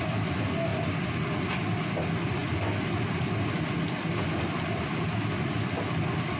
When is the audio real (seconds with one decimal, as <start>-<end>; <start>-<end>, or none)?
0.0-6.4